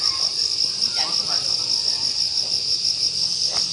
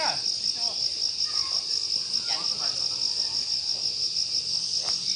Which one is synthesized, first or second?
first